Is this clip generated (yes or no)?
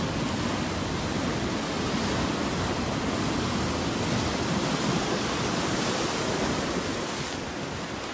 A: no